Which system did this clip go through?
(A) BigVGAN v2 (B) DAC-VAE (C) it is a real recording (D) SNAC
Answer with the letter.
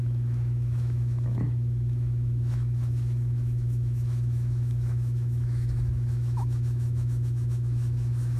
B